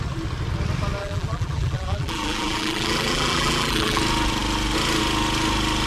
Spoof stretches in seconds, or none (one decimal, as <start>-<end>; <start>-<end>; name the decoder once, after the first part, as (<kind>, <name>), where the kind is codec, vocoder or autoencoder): 1.0-4.0 (vocoder, BigVGAN v2)